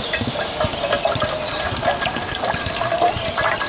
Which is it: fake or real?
real